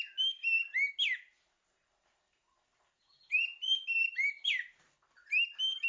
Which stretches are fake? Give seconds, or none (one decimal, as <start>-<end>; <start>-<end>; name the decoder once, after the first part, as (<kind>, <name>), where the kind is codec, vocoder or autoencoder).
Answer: none